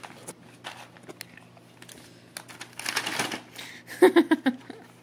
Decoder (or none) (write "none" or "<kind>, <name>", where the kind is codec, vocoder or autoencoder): none